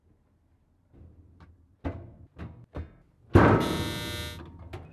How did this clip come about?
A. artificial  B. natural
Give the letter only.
B